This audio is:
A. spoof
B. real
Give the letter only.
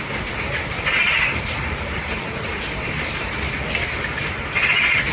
A